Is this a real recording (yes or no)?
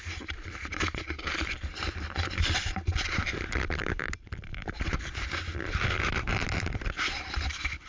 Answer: no